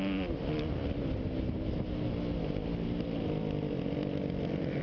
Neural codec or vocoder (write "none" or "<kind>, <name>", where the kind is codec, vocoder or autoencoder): none